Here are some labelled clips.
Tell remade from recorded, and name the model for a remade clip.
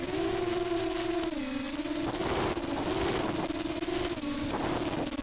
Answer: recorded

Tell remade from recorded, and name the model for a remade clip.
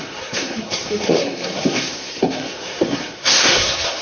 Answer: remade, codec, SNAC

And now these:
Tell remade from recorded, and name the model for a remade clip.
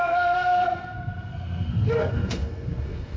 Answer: remade, codec, SNAC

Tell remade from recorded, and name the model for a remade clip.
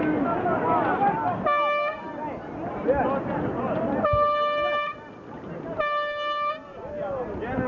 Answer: recorded